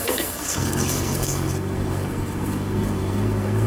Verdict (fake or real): fake